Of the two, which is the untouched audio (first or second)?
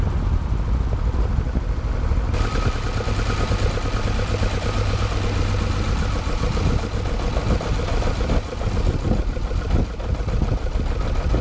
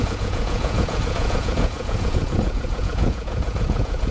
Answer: first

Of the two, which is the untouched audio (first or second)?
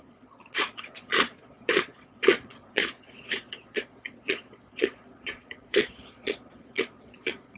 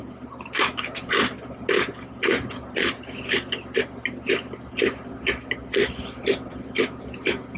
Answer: second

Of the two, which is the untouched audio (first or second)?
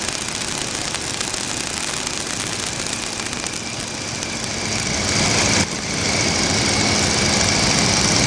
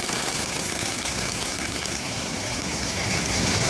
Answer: first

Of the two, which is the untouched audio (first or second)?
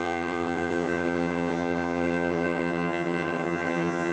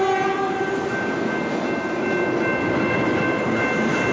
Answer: second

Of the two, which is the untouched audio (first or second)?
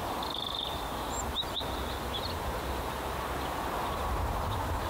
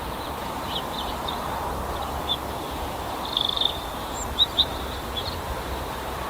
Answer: first